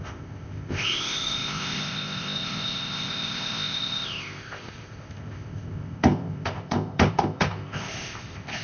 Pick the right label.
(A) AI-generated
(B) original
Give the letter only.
A